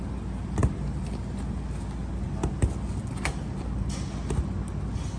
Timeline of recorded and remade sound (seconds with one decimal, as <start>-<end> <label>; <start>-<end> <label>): 0.0-5.2 recorded